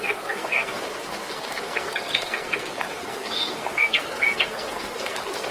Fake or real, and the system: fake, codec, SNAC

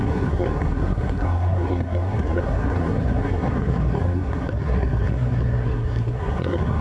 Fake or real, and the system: fake, codec, SNAC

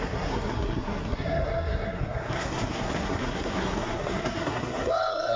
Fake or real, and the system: fake, codec, SNAC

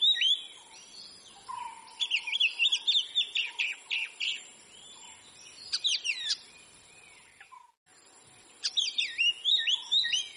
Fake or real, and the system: real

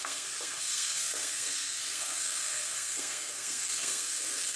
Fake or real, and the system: fake, codec, SNAC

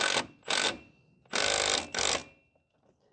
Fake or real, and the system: real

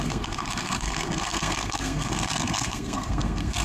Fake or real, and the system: fake, codec, SNAC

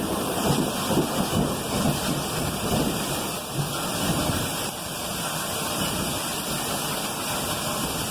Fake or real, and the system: real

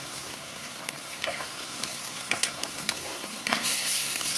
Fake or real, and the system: fake, codec, SNAC